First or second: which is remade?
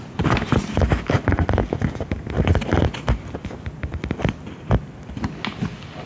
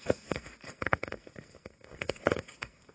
second